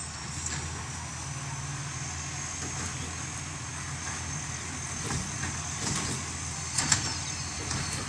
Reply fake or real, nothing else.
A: real